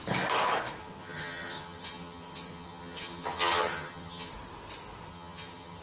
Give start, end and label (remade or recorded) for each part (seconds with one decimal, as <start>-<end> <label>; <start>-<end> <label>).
0.0-0.8 recorded; 0.8-4.3 remade; 4.3-5.1 recorded; 5.1-5.8 remade